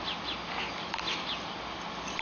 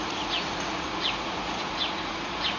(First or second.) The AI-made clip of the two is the second